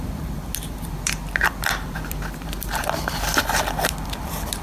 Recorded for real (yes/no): no